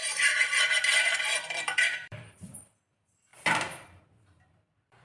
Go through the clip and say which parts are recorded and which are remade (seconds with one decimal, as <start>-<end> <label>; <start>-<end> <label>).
0.0-3.3 remade; 3.3-4.1 recorded; 4.1-5.0 remade